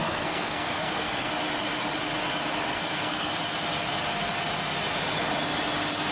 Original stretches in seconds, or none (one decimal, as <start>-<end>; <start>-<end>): 1.3-2.7; 3.3-6.1